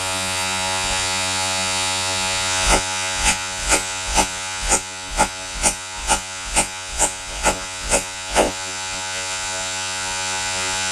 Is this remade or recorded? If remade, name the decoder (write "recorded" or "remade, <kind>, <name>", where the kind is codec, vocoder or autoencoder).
remade, vocoder, Vocos